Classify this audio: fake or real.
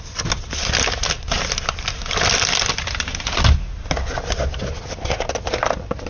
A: real